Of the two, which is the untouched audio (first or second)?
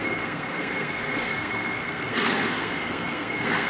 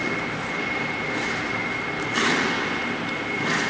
second